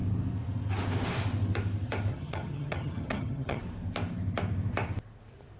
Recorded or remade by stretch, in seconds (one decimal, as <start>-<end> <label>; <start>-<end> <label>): 0.0-2.1 recorded; 2.1-3.6 remade; 3.6-5.6 recorded